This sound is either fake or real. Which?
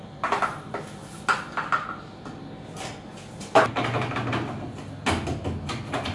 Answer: real